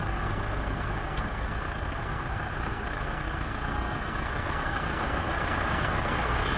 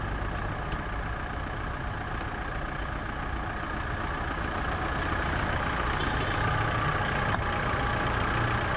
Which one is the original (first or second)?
second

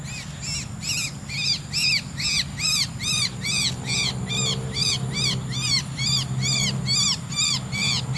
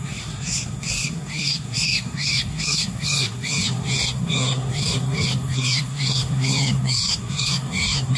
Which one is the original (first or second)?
first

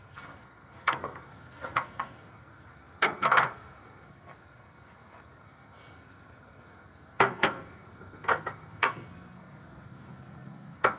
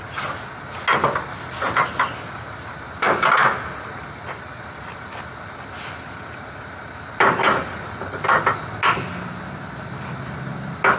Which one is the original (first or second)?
second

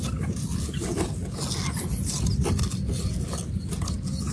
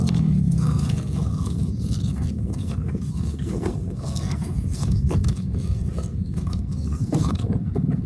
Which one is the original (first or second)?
first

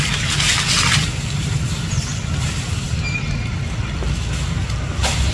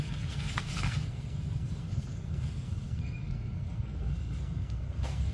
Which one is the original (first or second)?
first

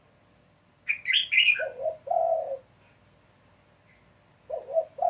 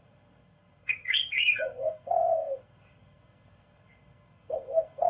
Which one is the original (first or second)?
first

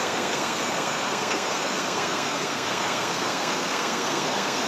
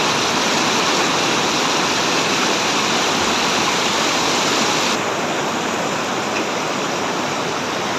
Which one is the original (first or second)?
second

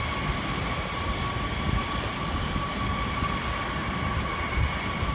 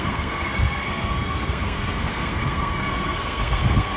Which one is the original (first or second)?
first